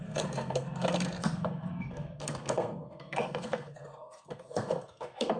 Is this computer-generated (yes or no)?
yes